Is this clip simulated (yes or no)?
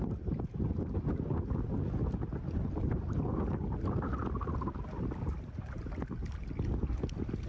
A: no